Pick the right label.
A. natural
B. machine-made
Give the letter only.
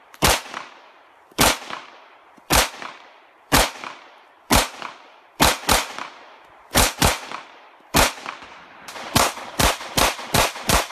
B